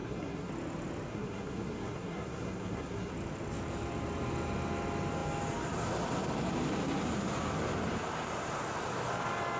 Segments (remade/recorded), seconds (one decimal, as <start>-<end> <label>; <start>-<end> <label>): 0.0-0.5 remade; 0.5-1.1 recorded; 1.1-3.1 remade; 3.1-9.6 recorded